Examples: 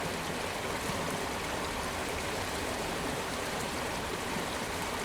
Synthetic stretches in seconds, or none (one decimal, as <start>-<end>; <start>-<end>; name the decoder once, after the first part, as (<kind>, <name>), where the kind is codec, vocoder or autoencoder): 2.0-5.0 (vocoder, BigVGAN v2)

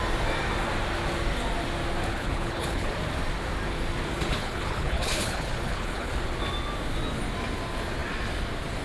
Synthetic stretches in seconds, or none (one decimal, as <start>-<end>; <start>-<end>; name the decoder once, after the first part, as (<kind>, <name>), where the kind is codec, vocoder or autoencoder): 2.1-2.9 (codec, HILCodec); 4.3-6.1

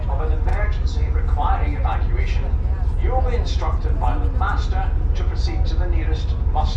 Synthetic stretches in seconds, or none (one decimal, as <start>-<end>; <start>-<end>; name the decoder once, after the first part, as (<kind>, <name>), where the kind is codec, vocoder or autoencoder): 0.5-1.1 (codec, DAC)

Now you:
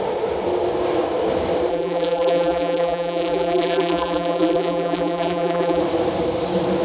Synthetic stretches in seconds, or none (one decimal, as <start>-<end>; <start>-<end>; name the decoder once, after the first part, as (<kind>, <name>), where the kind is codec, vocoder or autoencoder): 1.7-5.8 (vocoder, BigVGAN v2)

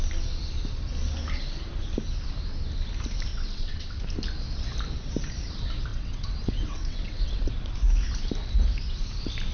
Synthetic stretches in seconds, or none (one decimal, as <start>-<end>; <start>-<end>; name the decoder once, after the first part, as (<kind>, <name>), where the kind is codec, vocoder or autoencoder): 3.3-4.0 (vocoder, WaveNeXt); 5.9-7.5